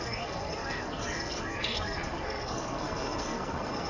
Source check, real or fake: fake